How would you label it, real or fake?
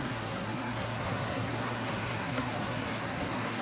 fake